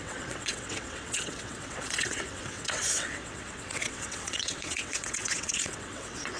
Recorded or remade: remade